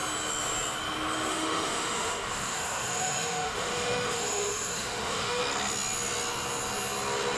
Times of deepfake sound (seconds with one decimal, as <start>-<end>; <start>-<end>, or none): 1.3-5.4